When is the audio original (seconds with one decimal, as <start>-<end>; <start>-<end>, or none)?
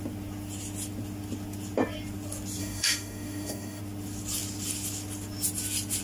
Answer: 0.0-2.6; 3.8-6.0